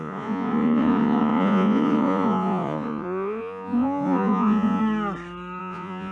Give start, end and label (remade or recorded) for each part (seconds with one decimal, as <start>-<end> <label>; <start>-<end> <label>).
0.0-4.8 remade; 4.8-5.6 recorded; 5.6-6.1 remade